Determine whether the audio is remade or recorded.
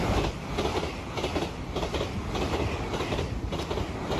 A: recorded